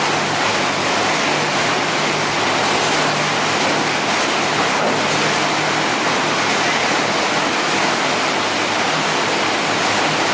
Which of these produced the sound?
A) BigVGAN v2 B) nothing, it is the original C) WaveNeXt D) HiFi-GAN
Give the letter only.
B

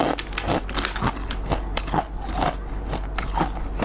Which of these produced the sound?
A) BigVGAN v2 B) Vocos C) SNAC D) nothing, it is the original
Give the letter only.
D